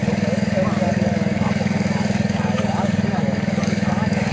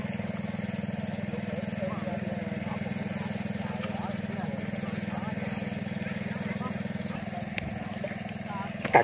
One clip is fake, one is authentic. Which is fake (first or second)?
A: first